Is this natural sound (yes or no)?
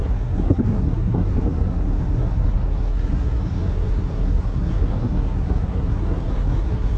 no